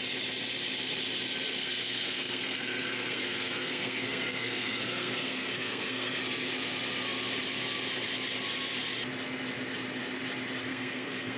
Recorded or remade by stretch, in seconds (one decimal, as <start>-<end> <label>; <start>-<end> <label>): 0.0-1.6 recorded; 1.6-6.2 remade; 6.2-10.7 recorded; 10.7-11.4 remade